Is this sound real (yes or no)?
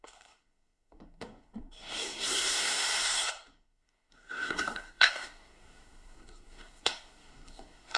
no